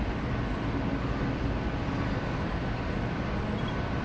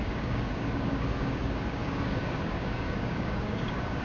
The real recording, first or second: first